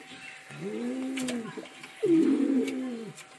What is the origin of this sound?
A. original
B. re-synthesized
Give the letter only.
A